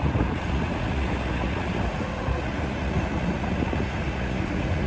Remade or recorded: remade